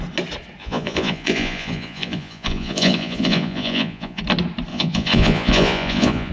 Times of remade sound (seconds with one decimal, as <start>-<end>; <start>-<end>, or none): 0.6-4.2; 4.7-6.3